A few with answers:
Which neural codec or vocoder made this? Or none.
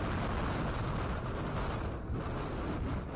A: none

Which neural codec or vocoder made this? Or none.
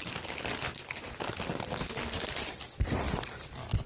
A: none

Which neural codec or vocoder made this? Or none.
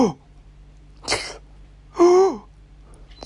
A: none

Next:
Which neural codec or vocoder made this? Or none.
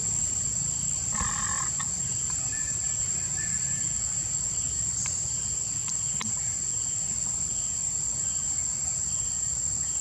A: none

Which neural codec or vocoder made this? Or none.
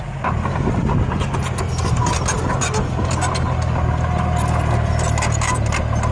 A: none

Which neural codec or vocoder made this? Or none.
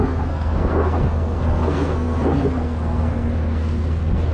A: codec, SNAC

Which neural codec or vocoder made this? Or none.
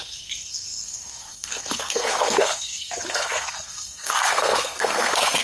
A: codec, SNAC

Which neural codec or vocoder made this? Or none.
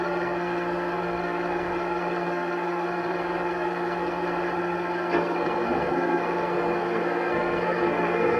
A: codec, SNAC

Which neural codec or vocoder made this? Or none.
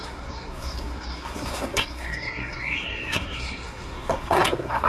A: codec, SNAC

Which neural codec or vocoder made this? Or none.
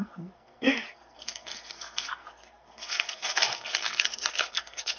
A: codec, SNAC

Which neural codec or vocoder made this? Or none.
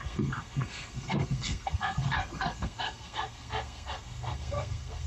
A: codec, SNAC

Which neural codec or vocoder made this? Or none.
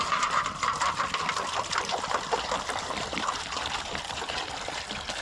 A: none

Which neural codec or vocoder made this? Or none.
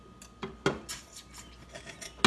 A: none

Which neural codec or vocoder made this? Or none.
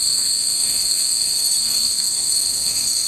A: codec, SNAC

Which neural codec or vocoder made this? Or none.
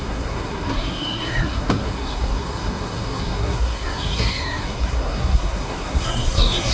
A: codec, SNAC